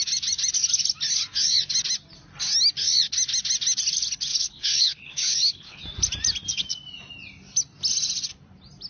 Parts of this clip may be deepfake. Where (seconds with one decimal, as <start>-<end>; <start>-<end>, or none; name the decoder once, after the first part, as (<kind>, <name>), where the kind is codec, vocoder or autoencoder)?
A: 4.3-5.8 (codec, HILCodec)